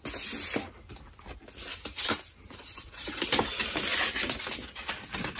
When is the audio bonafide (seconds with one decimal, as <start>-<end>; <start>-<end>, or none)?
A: 0.0-1.7; 3.4-5.4